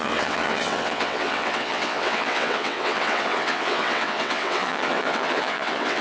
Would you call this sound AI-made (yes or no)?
yes